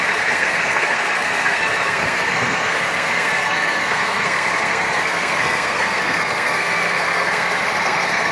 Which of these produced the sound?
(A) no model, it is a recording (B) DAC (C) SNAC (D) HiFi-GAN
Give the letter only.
C